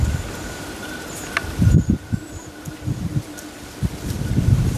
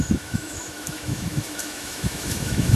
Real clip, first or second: first